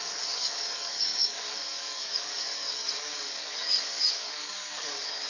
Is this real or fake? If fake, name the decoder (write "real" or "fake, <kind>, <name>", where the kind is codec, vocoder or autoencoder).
fake, codec, DAC